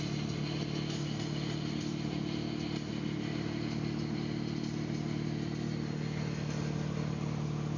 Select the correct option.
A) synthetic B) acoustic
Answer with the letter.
B